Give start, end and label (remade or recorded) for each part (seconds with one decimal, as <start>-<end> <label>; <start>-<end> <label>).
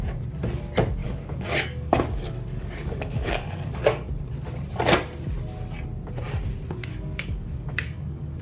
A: 0.0-1.0 recorded; 1.0-4.1 remade; 4.1-6.8 recorded; 6.8-8.4 remade